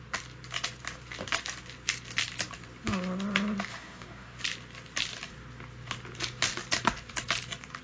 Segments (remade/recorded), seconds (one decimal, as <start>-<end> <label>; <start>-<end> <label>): 0.0-3.7 recorded; 3.7-4.4 remade; 4.4-7.8 recorded